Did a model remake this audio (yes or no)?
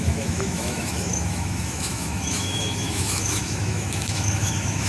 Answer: yes